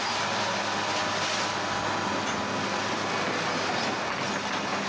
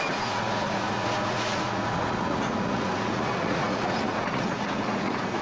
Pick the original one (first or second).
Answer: first